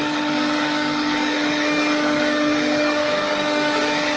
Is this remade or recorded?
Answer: remade